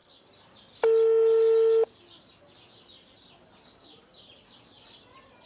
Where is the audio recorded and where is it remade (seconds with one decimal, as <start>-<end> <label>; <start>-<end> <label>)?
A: 0.0-5.5 recorded